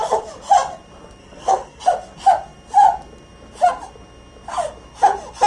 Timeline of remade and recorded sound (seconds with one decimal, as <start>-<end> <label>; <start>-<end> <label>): 0.0-1.2 recorded; 1.2-1.8 remade; 1.8-5.5 recorded